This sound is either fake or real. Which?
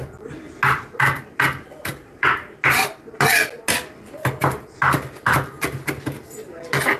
real